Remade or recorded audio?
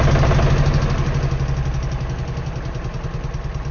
recorded